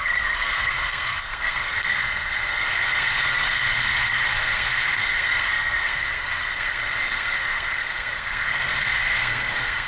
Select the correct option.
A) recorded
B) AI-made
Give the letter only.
B